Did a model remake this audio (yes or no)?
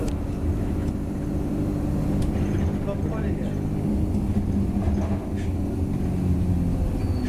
no